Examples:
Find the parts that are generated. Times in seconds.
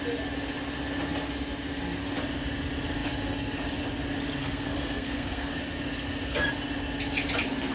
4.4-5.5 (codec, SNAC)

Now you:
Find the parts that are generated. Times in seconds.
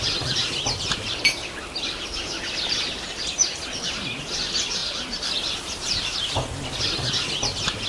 0.0-7.9 (vocoder, BigVGAN v2)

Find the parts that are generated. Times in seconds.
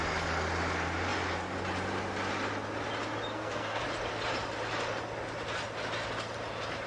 3.3-3.8 (codec, SNAC)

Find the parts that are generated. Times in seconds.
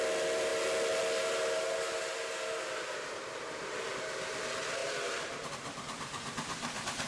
4.8-5.5 (vocoder, BigVGAN v2)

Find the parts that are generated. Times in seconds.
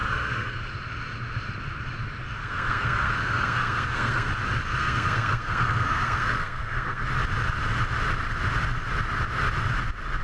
0.0-0.6 (codec, SNAC); 2.4-4.3; 4.8-7.0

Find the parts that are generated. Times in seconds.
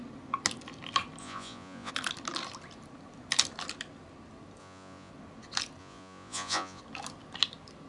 1.2-1.9 (vocoder, Vocos); 4.6-5.1; 5.8-6.8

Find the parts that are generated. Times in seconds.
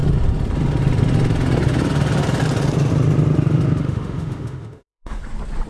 3.8-5.2 (autoencoder, DAC-VAE)